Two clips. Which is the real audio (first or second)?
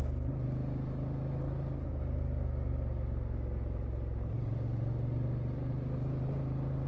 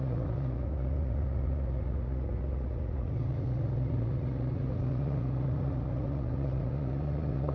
first